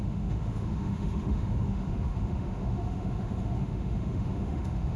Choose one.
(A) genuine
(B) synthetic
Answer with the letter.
B